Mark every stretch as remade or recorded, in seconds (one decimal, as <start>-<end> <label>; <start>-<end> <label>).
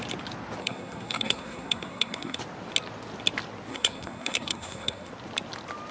0.0-0.6 recorded; 0.6-2.4 remade; 2.4-3.7 recorded; 3.7-5.1 remade; 5.1-5.9 recorded